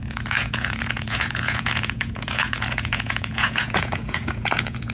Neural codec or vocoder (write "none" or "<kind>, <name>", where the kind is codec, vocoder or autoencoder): vocoder, Vocos